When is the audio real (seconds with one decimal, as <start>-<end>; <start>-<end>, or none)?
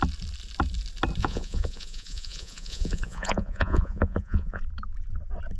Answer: 0.0-1.2; 4.6-5.6